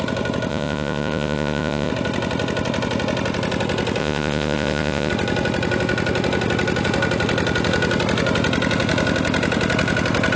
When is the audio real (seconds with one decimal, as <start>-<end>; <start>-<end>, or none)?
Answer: 0.0-0.5; 1.9-4.0; 5.1-10.4